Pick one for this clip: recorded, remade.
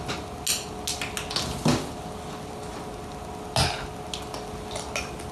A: recorded